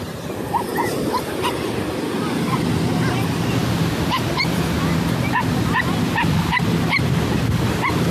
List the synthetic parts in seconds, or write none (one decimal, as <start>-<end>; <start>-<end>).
none